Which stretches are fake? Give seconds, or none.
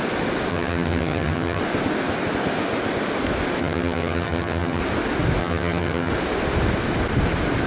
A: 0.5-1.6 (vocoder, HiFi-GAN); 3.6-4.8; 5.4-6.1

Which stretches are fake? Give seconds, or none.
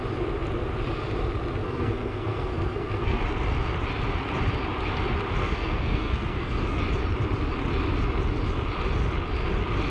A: 1.6-3.2 (codec, SNAC); 5.4-6.8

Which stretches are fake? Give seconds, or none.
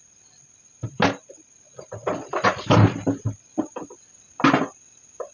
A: none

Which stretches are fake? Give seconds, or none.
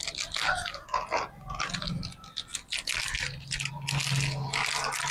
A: none